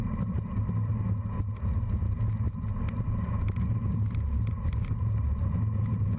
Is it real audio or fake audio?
real